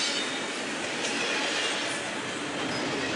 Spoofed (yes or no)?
no